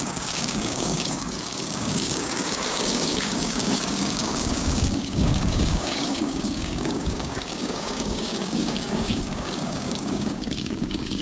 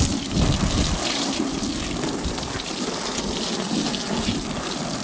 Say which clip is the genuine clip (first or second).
second